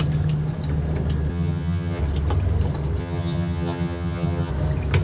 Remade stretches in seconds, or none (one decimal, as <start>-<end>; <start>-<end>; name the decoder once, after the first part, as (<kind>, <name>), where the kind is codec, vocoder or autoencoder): 1.3-2.0 (vocoder, HiFi-GAN); 3.0-4.5